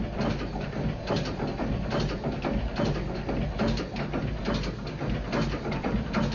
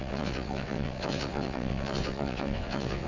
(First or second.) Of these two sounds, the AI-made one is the second